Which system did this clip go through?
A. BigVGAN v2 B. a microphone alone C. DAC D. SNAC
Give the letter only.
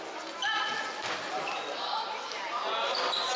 B